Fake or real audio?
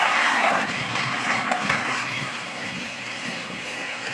fake